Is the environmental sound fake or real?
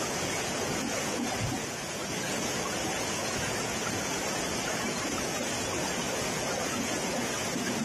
fake